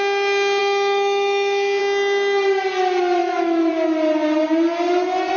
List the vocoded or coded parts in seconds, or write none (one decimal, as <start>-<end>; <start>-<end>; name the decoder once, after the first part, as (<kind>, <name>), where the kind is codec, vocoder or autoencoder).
0.6-1.8 (autoencoder, DAC-VAE); 3.2-3.7